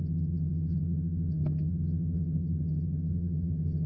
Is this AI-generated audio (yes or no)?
yes